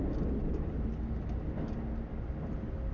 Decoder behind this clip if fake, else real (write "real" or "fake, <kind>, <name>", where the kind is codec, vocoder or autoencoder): real